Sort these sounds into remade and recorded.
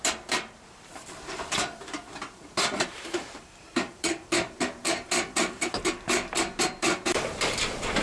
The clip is remade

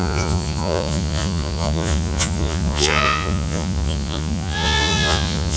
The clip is remade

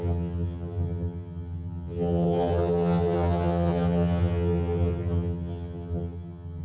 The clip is remade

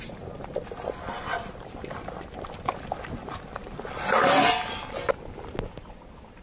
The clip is recorded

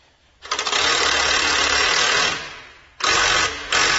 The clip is recorded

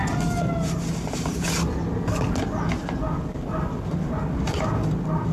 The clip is recorded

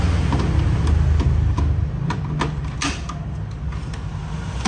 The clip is recorded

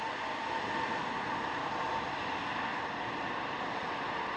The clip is recorded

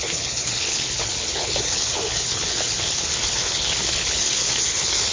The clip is remade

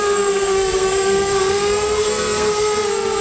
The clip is remade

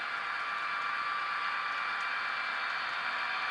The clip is recorded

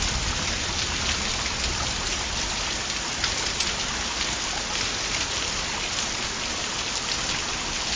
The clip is recorded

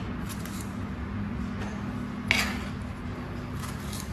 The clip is recorded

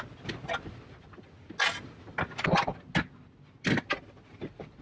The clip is recorded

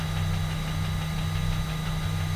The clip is recorded